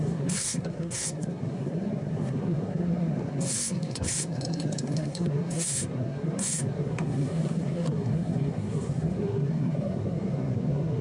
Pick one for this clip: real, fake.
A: fake